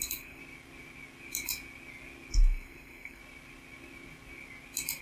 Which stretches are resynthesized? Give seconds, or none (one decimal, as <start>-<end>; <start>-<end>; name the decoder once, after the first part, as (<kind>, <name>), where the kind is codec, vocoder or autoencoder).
0.0-0.4 (codec, SNAC); 2.3-3.2